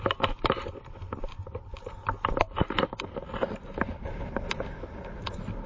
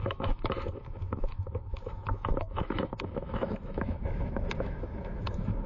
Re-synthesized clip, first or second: second